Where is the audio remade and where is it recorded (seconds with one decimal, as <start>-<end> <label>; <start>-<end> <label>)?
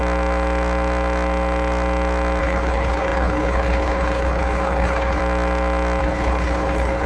0.0-2.4 recorded; 2.4-5.2 remade; 5.2-6.0 recorded; 6.0-7.1 remade